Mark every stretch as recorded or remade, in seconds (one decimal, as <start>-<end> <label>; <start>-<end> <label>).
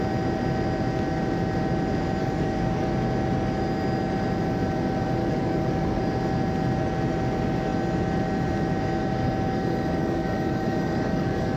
0.0-2.2 recorded; 2.2-2.9 remade; 2.9-5.2 recorded; 5.2-6.0 remade; 6.0-10.0 recorded; 10.0-11.6 remade